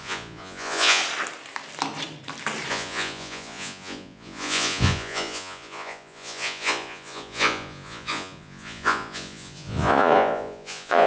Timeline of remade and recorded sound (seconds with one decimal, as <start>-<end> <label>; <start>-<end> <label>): 0.0-1.0 remade; 1.0-2.7 recorded; 2.7-11.1 remade